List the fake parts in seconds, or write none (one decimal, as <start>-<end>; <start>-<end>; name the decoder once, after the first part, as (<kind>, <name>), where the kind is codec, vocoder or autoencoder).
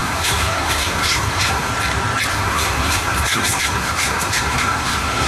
0.0-1.7 (codec, SNAC); 2.3-5.3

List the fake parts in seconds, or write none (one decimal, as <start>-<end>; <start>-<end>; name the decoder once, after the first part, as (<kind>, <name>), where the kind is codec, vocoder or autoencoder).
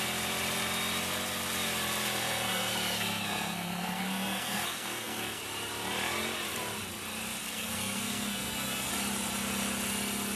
2.2-5.4 (codec, SNAC); 7.4-8.9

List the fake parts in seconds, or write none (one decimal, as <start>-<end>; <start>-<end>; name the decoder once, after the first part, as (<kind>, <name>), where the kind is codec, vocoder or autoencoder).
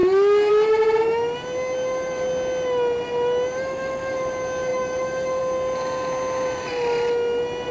4.7-5.4 (autoencoder, DAC-VAE)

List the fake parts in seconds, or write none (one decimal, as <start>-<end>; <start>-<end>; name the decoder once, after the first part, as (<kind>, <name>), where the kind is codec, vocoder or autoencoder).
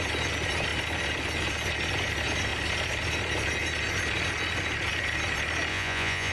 5.7-6.3 (vocoder, Vocos)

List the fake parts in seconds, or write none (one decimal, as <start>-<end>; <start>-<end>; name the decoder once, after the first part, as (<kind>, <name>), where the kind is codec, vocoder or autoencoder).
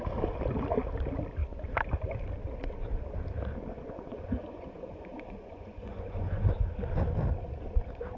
3.7-6.5 (vocoder, Vocos)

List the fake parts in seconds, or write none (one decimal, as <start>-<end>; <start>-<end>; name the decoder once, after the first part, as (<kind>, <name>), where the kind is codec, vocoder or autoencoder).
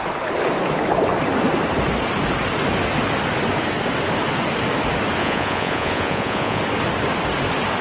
5.2-6.6 (vocoder, Vocos)